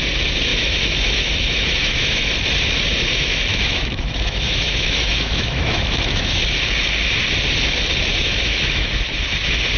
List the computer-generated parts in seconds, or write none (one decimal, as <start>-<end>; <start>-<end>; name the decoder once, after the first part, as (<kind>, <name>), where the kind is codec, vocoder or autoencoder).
0.5-2.3 (autoencoder, DAC-VAE); 3.5-6.4; 8.1-8.9